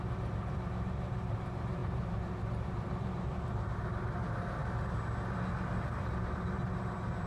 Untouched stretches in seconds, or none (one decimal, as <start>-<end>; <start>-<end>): 4.6-6.0